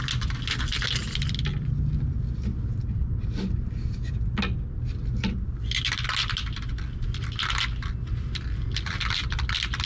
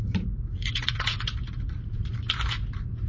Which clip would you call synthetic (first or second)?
second